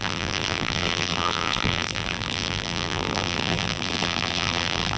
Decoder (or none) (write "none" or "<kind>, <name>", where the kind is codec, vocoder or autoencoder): vocoder, BigVGAN v2